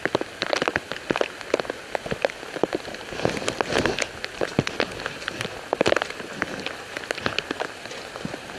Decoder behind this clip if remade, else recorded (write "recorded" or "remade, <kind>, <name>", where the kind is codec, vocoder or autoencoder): recorded